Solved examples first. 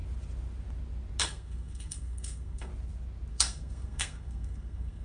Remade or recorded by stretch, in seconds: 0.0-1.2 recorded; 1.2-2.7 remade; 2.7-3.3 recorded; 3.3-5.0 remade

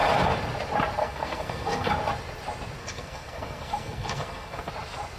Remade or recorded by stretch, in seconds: 0.0-1.0 recorded; 1.0-1.9 remade; 1.9-2.8 recorded; 2.8-4.7 remade; 4.7-5.2 recorded

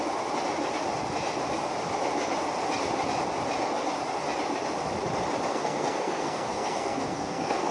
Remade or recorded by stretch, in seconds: 0.0-5.5 recorded; 5.5-7.7 remade

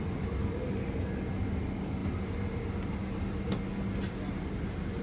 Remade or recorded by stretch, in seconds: 0.0-5.0 recorded

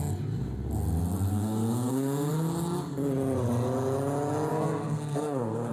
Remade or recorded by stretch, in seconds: 0.0-1.3 recorded; 1.3-2.3 remade; 2.3-4.5 recorded; 4.5-5.7 remade

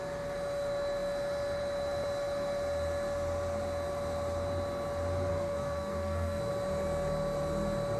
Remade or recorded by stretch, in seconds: 0.0-5.3 recorded; 5.3-6.5 remade; 6.5-8.0 recorded